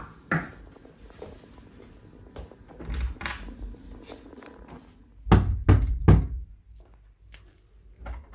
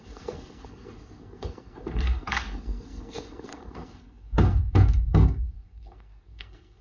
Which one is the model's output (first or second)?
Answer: second